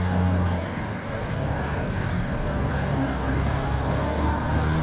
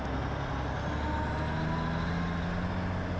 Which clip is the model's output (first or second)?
first